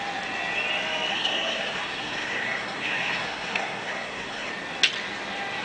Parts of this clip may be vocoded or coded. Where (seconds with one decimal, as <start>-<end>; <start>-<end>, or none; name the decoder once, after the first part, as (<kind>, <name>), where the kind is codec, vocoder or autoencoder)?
1.1-4.5 (codec, SNAC)